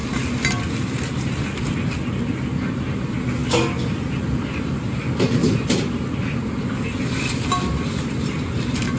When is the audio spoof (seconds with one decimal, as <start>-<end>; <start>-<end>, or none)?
none